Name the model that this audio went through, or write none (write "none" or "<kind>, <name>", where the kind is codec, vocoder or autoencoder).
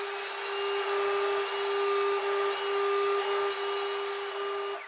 none